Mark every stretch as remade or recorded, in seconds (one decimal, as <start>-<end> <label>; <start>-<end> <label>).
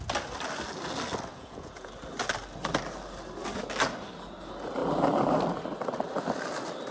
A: 0.0-1.3 recorded; 1.3-1.9 remade; 1.9-6.9 recorded